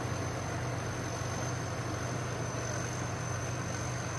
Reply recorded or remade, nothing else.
recorded